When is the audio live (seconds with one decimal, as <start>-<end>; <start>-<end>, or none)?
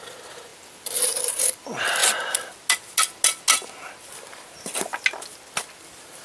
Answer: 2.0-5.7